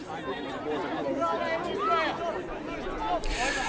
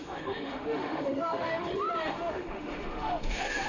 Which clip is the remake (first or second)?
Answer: second